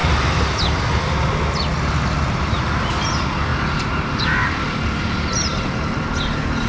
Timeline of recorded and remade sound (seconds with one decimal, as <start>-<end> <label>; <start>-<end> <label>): 0.0-0.8 remade; 0.8-5.5 recorded; 5.5-6.0 remade; 6.0-6.7 recorded